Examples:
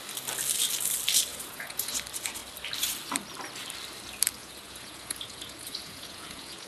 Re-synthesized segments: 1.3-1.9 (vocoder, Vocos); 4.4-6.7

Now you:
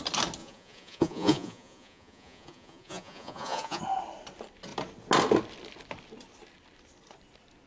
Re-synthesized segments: 0.4-3.8 (vocoder, Vocos)

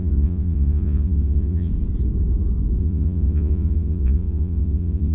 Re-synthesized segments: 0.0-1.7 (vocoder, Vocos); 2.8-5.1